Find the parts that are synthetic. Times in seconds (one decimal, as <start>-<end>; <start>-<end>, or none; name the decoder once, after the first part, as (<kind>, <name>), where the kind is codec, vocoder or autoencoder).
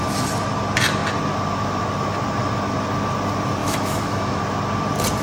3.6-4.4 (autoencoder, DAC-VAE)